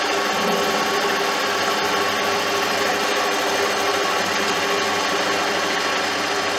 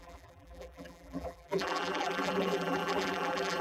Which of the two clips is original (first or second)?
first